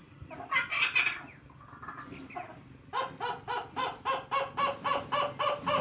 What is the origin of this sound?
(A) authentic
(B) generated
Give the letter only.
A